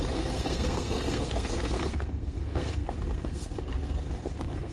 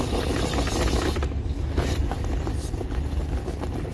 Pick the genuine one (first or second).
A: second